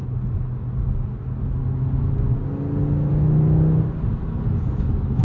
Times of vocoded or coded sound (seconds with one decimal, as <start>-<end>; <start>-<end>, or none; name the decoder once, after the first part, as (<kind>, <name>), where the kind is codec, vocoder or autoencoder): none